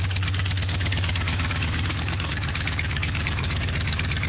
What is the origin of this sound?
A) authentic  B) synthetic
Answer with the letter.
B